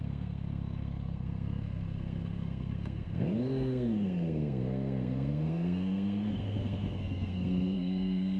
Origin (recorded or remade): remade